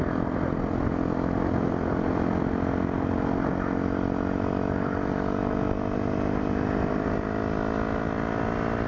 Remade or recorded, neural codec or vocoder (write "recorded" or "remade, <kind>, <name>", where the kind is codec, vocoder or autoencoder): recorded